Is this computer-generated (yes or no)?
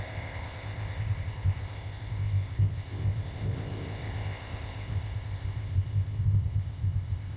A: yes